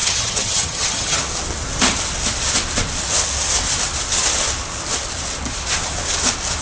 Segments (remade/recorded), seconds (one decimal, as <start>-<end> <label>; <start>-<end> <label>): 0.0-1.2 remade; 1.2-6.6 recorded